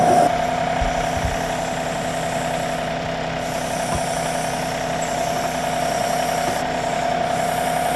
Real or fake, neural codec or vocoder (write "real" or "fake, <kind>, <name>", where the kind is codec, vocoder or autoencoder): real